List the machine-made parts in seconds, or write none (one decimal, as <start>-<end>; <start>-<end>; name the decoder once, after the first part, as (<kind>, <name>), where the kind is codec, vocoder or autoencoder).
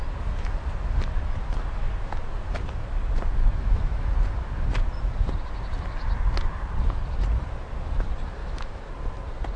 3.4-4.1 (autoencoder, DAC-VAE); 8.4-8.9